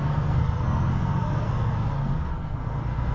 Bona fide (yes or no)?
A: no